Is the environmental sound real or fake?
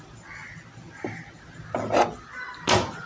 real